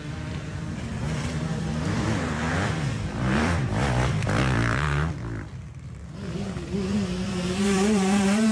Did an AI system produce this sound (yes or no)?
yes